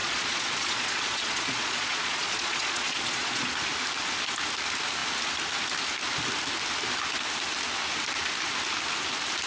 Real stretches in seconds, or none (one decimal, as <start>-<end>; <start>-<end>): 3.5-9.5